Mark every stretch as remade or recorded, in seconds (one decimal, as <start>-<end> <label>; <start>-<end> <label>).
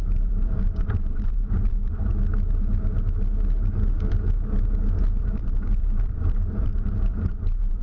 0.0-2.1 remade; 2.1-5.2 recorded; 5.2-7.8 remade